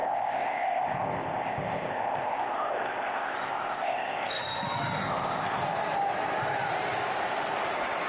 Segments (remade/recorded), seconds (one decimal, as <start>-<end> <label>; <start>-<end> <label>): 0.0-4.4 remade; 4.4-5.0 recorded; 5.0-5.6 remade; 5.6-8.1 recorded